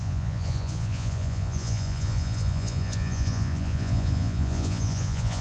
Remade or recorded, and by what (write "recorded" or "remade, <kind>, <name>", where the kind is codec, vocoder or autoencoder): remade, vocoder, Vocos